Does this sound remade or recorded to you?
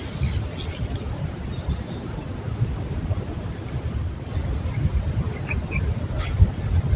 recorded